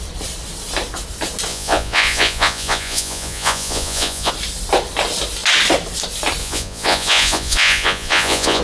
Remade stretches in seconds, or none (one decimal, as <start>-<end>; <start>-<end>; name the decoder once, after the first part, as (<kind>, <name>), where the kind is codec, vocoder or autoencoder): 1.5-4.3 (vocoder, Vocos); 6.4-8.6